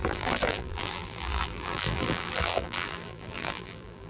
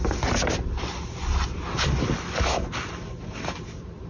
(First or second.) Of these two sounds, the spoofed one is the first